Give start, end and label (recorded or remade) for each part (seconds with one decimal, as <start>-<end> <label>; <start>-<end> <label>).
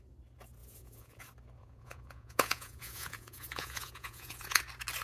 0.0-0.6 recorded; 0.6-1.2 remade; 1.2-1.6 recorded; 1.6-4.6 remade; 4.6-5.0 recorded